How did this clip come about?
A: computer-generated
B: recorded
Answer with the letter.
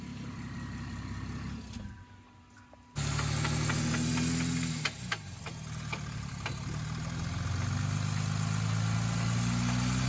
B